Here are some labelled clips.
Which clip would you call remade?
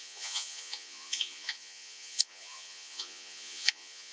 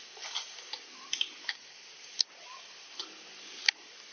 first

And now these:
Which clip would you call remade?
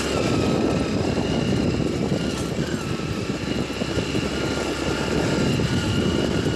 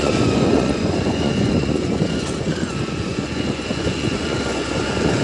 second